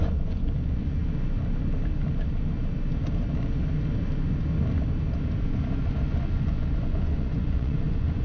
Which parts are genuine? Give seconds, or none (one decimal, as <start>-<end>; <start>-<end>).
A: 1.0-5.4